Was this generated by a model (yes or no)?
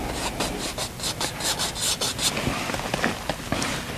no